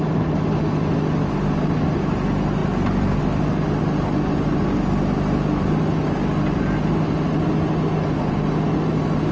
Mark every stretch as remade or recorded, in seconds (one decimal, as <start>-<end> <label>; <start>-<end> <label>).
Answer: 0.0-9.3 recorded